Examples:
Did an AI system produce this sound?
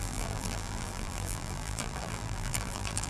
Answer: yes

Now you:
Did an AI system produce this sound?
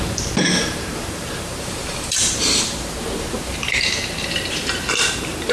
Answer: yes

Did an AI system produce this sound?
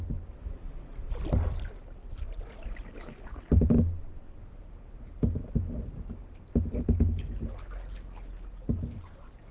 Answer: no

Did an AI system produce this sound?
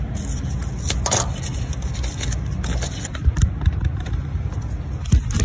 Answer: no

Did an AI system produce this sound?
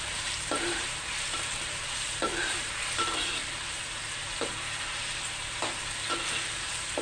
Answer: yes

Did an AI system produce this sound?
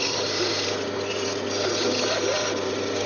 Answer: no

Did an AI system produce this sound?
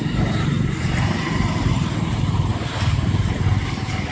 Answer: yes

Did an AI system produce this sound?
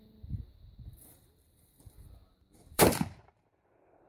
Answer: yes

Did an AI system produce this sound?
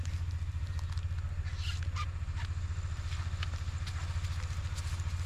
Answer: no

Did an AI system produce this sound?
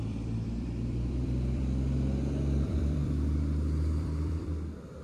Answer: yes